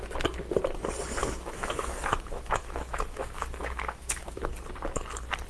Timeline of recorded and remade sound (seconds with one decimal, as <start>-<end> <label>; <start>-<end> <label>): 0.0-1.2 recorded; 1.2-4.5 remade; 4.5-5.5 recorded